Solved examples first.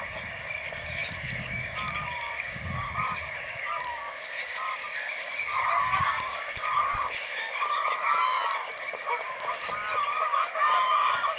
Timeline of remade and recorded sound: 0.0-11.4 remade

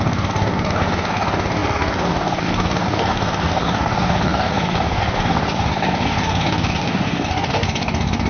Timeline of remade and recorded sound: 0.0-8.3 remade

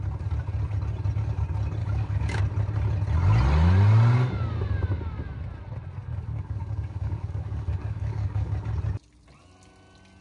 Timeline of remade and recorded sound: 0.0-1.8 recorded; 1.8-2.4 remade; 2.4-6.0 recorded; 6.0-8.7 remade; 8.7-10.2 recorded

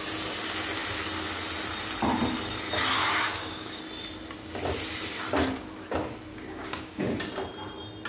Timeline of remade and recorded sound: 0.0-3.0 recorded; 3.0-3.8 remade; 3.8-6.3 recorded; 6.3-7.2 remade; 7.2-8.1 recorded

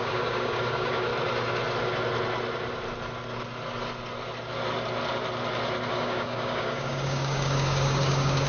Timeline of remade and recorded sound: 0.0-1.1 remade; 1.1-5.9 recorded; 5.9-8.5 remade

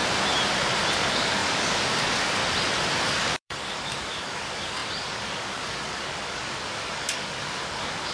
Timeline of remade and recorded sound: 0.0-0.9 recorded; 0.9-2.4 remade; 2.4-3.0 recorded; 3.0-8.1 remade